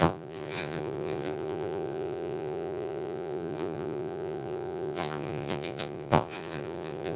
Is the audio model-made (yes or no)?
yes